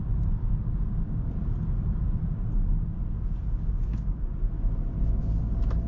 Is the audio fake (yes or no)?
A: no